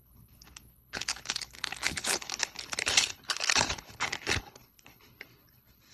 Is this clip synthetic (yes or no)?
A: yes